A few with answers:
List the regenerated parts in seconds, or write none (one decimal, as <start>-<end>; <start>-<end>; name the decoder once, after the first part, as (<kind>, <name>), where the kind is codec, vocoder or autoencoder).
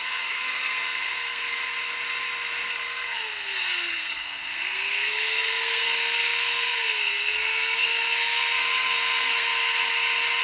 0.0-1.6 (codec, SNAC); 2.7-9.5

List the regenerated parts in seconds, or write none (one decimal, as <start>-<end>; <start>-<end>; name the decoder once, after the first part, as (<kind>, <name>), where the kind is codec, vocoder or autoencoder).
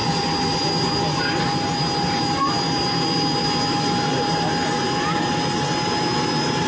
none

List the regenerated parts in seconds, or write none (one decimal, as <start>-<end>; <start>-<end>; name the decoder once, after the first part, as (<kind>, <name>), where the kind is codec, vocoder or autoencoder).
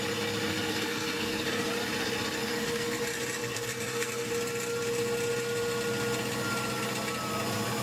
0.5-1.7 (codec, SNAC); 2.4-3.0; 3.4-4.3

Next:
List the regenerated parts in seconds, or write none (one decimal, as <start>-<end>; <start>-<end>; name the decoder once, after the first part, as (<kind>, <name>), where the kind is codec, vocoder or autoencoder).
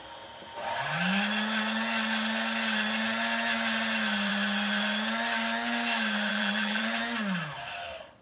6.3-6.8 (vocoder, BigVGAN v2)